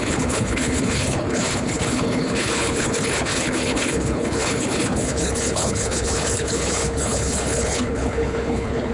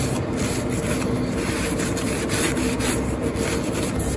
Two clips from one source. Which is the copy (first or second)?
first